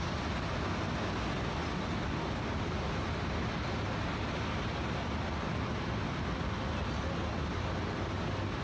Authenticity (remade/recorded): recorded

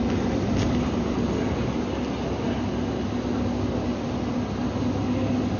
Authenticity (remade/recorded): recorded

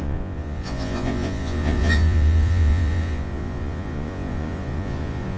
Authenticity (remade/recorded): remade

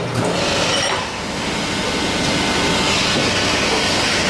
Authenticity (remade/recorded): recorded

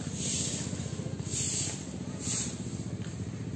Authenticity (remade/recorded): recorded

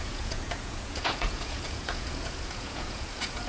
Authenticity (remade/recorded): remade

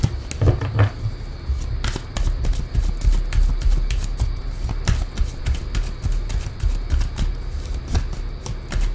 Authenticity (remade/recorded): recorded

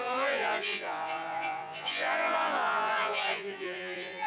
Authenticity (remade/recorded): remade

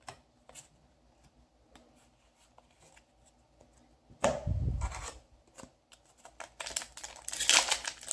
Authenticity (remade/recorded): recorded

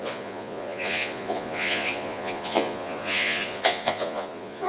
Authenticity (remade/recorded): remade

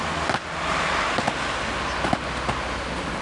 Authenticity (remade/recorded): recorded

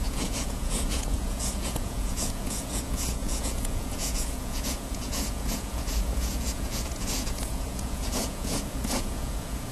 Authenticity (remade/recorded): remade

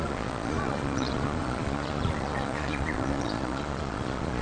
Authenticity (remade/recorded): remade